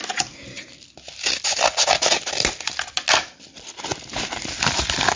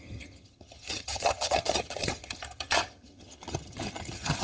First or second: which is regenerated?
second